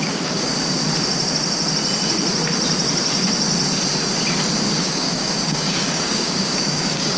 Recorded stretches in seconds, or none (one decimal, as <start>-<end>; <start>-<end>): 0.5-4.8